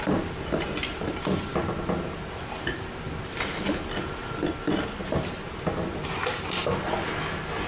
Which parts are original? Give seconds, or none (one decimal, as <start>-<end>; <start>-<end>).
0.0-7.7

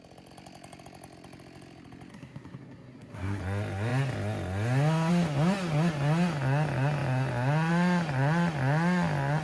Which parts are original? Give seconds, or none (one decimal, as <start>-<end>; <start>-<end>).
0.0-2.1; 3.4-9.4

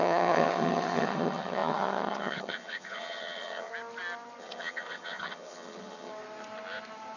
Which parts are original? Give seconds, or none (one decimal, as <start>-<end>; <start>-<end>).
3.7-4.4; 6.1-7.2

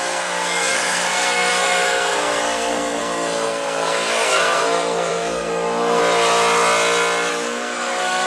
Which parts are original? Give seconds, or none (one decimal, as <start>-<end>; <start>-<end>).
6.0-7.3